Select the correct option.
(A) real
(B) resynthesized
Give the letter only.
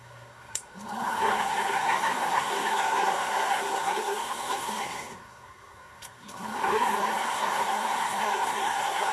B